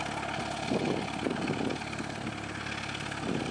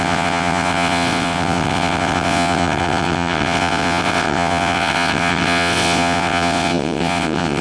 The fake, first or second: second